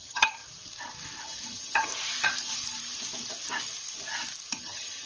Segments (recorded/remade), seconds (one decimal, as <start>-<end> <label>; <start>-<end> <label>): 0.0-0.4 remade; 0.4-1.2 recorded; 1.2-1.9 remade; 1.9-4.6 recorded; 4.6-5.1 remade